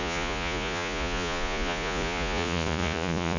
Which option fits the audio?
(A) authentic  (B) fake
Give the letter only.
B